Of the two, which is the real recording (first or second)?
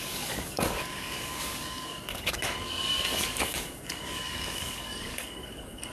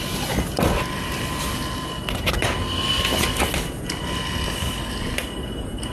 second